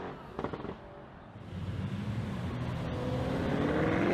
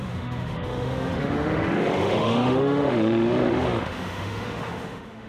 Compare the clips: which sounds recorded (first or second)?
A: first